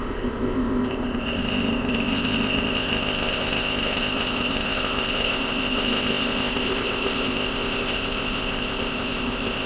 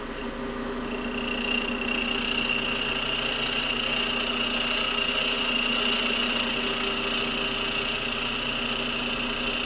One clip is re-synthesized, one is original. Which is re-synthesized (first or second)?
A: first